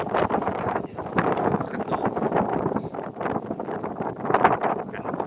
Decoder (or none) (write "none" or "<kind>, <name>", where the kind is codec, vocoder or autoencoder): vocoder, BigVGAN v2